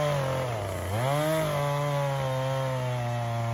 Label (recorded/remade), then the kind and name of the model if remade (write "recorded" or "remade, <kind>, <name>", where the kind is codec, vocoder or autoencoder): recorded